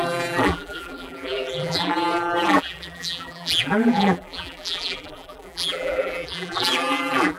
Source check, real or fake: fake